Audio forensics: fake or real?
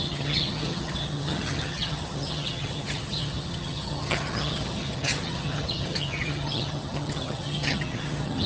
fake